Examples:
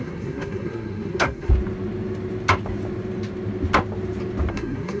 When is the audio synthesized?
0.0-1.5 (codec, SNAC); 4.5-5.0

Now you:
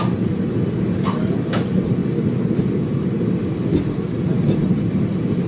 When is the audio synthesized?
3.4-4.6 (vocoder, BigVGAN v2)

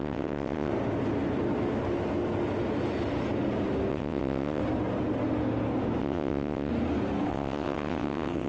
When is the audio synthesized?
0.0-0.7 (vocoder, WaveNeXt); 3.9-4.6; 6.0-6.7; 7.3-8.5

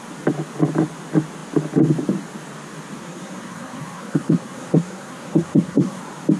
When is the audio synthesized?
3.0-6.0 (codec, SNAC)

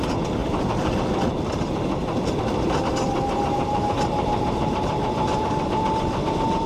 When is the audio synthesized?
0.4-0.9 (vocoder, BigVGAN v2); 2.0-5.7

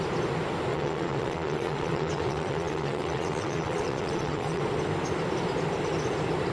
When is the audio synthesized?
0.7-4.6 (vocoder, WaveNeXt)

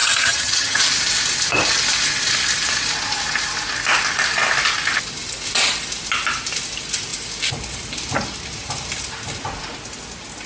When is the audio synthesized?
0.0-0.9 (vocoder, HiFi-GAN)